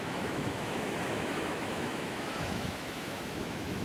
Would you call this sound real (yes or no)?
no